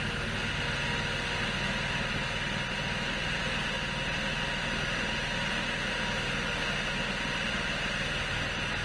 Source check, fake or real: real